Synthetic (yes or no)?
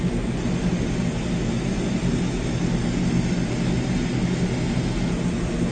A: no